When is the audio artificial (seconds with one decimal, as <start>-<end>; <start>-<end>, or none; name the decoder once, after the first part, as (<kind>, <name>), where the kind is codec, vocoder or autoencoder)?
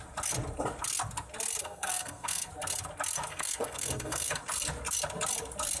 1.6-2.5 (codec, SNAC); 3.3-4.4